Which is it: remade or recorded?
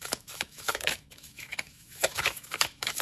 remade